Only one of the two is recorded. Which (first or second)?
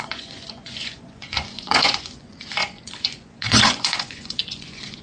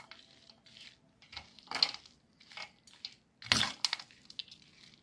second